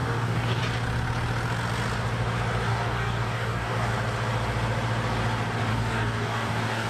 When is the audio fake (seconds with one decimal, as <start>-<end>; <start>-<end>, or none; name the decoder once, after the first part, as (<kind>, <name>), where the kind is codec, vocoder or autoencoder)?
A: 0.0-0.6 (codec, DAC); 2.7-3.9; 5.7-6.9